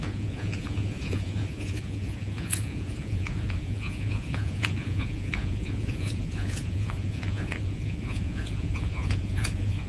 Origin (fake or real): fake